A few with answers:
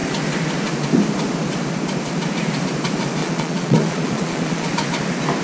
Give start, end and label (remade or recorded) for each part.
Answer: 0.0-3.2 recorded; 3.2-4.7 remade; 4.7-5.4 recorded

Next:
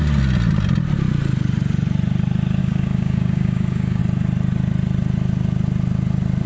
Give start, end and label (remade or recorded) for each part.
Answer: 0.0-2.6 recorded; 2.6-4.0 remade; 4.0-6.5 recorded

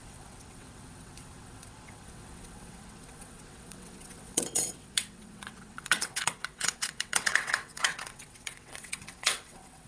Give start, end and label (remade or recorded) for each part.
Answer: 0.0-9.9 remade